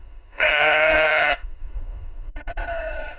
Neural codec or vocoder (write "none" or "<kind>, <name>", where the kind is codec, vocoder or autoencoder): autoencoder, DAC-VAE